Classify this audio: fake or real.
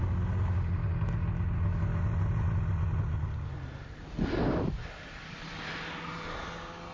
real